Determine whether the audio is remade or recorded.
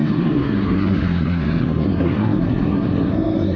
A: remade